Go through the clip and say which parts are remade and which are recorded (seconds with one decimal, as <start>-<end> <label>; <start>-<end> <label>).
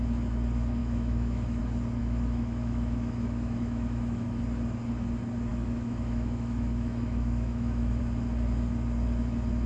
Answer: 0.0-0.8 recorded; 0.8-1.6 remade; 1.6-2.0 recorded; 2.0-4.4 remade; 4.4-5.5 recorded; 5.5-8.0 remade; 8.0-9.7 recorded